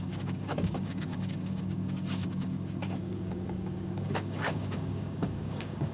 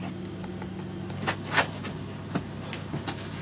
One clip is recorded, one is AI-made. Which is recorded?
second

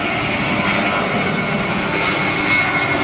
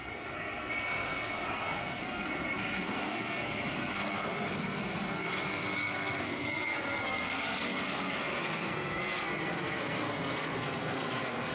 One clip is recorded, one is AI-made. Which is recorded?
first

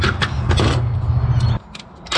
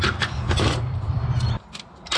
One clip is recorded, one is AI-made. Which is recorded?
first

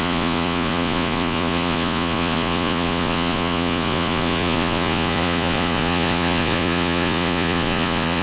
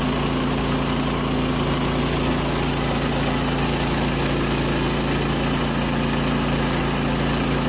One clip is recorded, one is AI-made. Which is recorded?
second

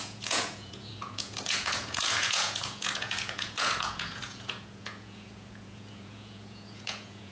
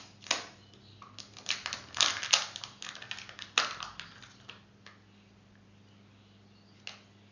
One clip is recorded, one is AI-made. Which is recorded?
second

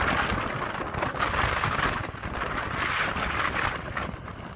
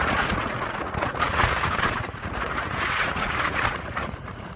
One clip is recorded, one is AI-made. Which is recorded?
first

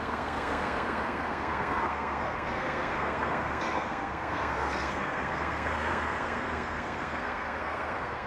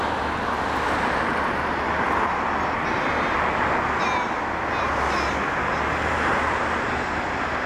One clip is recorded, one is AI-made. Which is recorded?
second